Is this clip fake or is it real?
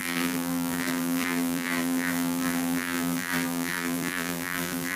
fake